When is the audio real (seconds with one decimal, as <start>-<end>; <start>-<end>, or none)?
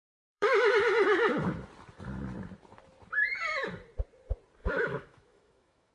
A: 0.7-4.6